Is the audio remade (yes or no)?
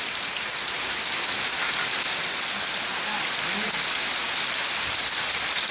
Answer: no